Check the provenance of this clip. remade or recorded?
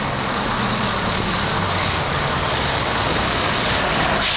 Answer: remade